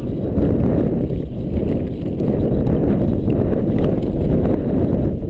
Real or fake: real